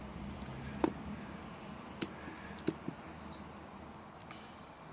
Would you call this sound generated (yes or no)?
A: no